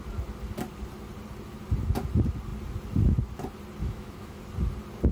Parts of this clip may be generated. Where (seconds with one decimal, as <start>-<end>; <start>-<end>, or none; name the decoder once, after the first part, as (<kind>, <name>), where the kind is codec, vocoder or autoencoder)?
3.8-4.4 (autoencoder, DAC-VAE)